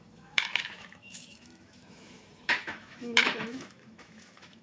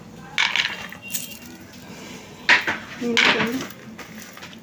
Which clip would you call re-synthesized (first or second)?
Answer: first